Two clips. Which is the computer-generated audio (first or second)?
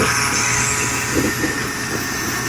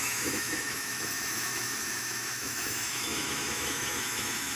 second